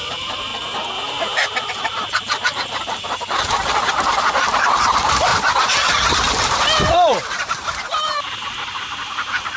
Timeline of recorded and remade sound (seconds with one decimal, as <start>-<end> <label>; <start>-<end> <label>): 0.0-0.5 remade; 0.5-1.7 recorded; 1.7-5.3 remade; 5.3-6.4 recorded; 6.4-9.6 remade